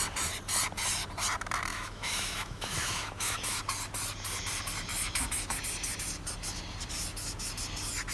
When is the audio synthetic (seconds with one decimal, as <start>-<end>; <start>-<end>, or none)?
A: 1.7-3.6